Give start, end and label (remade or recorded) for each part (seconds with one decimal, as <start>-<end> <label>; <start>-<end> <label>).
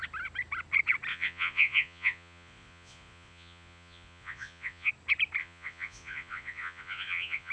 0.0-1.1 recorded; 1.1-4.9 remade; 4.9-5.4 recorded; 5.4-7.5 remade